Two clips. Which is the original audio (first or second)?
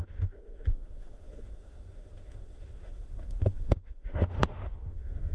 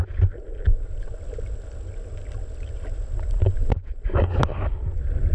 second